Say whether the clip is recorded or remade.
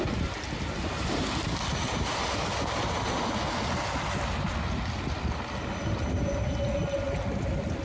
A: recorded